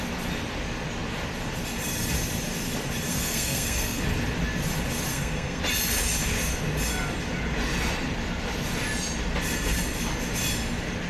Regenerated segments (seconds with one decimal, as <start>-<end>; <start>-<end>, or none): 3.1-4.0; 5.1-5.6